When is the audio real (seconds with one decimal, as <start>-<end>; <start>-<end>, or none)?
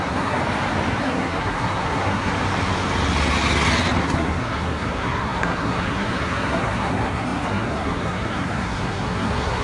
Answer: 0.4-1.0; 2.3-4.0